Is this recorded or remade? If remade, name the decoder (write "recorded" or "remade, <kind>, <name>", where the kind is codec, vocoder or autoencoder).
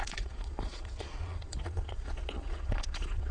remade, vocoder, Vocos